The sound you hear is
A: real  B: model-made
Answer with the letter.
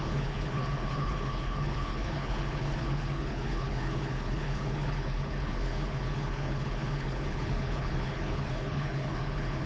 B